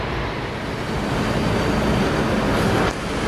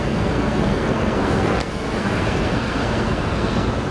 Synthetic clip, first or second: second